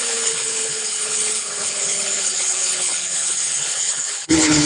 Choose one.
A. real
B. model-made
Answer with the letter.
B